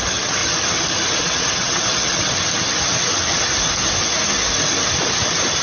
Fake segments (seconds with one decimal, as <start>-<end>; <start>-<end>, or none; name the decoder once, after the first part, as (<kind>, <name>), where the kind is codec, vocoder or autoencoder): 0.0-0.4 (vocoder, WaveNeXt); 1.2-2.4